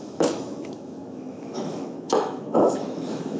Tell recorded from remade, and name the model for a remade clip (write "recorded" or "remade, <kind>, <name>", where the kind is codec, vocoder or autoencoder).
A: remade, autoencoder, DAC-VAE